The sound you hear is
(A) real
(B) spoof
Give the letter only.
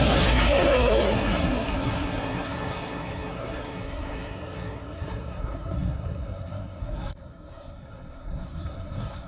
B